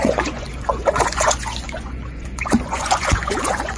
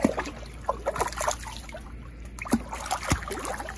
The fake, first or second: first